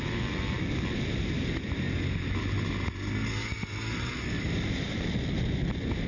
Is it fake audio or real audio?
real